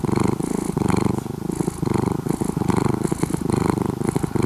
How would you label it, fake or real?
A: real